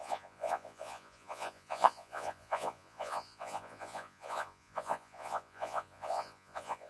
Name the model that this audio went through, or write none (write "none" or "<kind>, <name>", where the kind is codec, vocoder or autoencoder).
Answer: vocoder, Vocos